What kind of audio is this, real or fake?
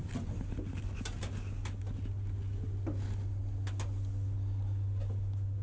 real